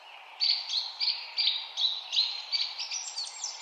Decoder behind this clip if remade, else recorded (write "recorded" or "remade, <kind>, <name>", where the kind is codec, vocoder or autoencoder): recorded